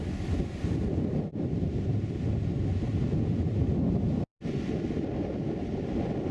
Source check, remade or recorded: recorded